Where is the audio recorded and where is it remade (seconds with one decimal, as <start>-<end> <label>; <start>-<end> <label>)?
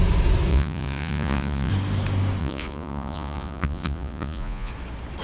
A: 0.0-0.5 recorded; 0.5-1.7 remade; 1.7-2.4 recorded; 2.4-4.7 remade; 4.7-5.2 recorded